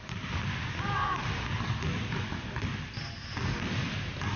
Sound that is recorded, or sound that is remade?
recorded